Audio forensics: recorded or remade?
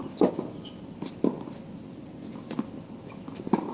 recorded